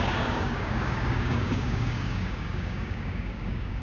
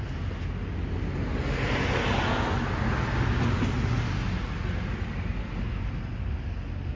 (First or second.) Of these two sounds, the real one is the second